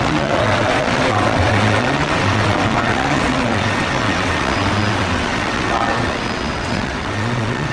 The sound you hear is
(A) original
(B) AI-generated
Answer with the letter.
B